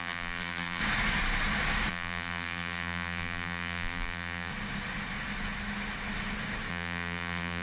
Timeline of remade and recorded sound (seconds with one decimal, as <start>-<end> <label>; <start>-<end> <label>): 0.0-0.8 remade; 0.8-1.9 recorded; 1.9-4.5 remade; 4.5-6.7 recorded; 6.7-7.6 remade